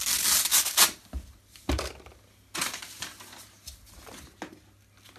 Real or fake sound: real